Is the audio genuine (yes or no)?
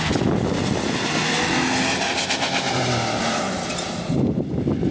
yes